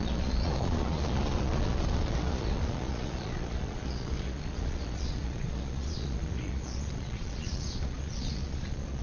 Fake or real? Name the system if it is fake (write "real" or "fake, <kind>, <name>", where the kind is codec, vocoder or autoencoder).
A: fake, vocoder, Vocos